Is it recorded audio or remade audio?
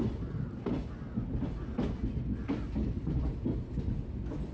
recorded